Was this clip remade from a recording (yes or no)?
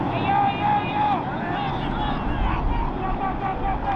no